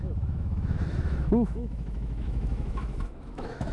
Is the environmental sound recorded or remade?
remade